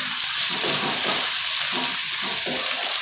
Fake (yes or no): no